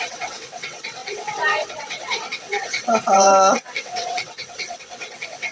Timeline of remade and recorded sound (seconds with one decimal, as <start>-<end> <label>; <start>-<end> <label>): 0.0-5.5 remade